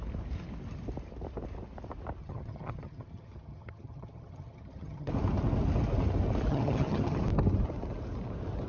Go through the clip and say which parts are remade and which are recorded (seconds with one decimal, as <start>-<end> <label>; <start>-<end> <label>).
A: 0.0-2.2 recorded; 2.2-5.1 remade; 5.1-6.5 recorded; 6.5-7.2 remade; 7.2-8.7 recorded